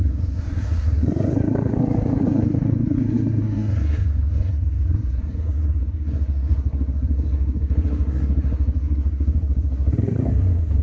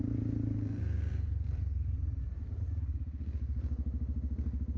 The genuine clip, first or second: second